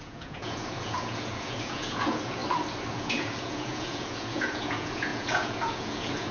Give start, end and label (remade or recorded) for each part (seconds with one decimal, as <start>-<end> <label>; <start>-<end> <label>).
0.0-2.4 remade; 2.4-2.9 recorded; 2.9-6.3 remade